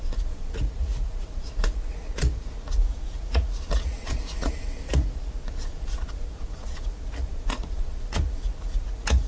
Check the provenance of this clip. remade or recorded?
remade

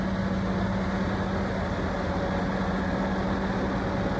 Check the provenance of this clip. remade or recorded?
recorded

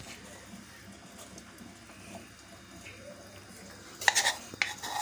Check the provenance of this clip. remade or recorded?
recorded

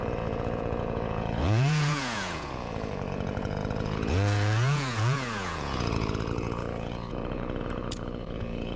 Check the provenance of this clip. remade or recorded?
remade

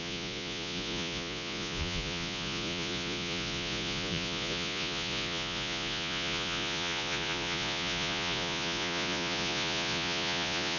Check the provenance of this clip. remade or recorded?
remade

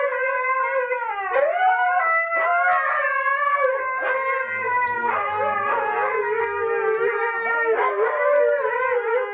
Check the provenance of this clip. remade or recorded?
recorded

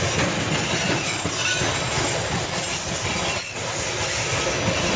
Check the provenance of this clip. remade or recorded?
recorded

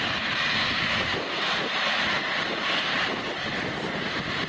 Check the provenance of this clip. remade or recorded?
recorded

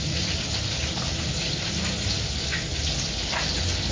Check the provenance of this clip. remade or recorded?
recorded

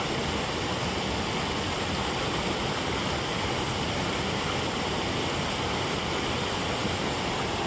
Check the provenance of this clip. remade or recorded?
recorded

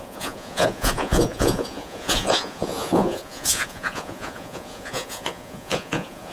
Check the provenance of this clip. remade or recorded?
remade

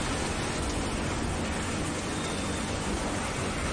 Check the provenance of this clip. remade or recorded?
remade